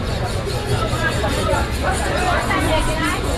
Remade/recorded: remade